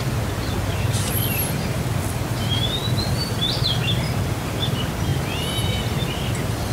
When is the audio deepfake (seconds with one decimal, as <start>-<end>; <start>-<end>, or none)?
5.1-6.1